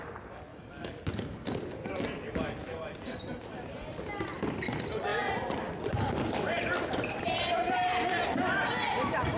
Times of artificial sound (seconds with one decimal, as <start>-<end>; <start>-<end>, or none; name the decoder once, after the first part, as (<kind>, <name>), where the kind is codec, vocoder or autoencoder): 0.5-1.0 (autoencoder, DAC-VAE)